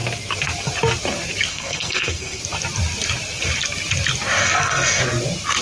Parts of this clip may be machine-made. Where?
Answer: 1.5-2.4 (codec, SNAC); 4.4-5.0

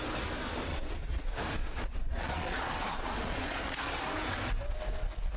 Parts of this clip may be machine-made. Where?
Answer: 0.7-1.2 (vocoder, Vocos); 1.6-4.0

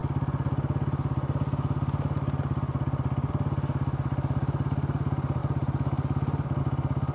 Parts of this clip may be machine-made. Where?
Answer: none